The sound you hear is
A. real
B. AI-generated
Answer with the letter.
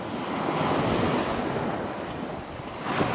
A